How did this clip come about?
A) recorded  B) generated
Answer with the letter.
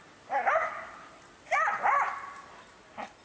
A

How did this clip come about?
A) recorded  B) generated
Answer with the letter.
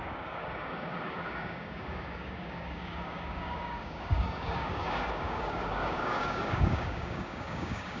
B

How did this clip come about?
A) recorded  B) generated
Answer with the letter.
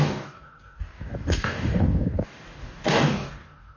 B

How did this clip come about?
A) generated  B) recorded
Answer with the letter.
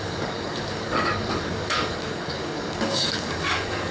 A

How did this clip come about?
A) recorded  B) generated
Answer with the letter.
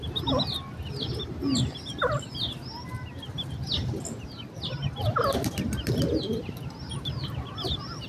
A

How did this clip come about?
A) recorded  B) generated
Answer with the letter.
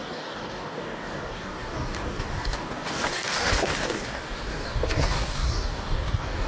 B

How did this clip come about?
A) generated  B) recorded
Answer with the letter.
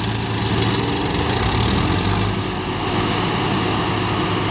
B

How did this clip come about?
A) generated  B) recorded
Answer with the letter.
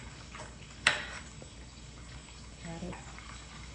A